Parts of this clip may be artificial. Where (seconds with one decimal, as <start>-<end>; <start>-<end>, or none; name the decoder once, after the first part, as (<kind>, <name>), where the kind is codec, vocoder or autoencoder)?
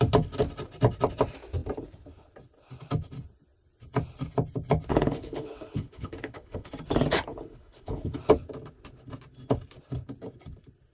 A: 4.9-6.7 (codec, HILCodec); 7.3-8.2